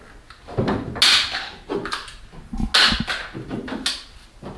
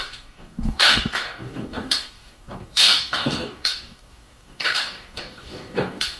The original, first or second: first